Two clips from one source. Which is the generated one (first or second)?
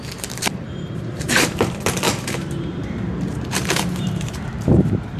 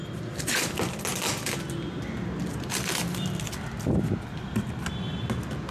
first